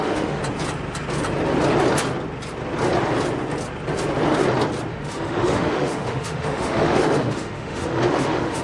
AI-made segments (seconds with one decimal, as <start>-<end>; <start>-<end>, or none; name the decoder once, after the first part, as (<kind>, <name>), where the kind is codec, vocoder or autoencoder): 0.0-0.4 (autoencoder, DAC-VAE); 4.9-8.6